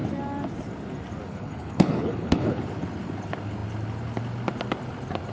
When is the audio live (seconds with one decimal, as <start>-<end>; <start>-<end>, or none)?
0.0-1.3; 2.6-5.3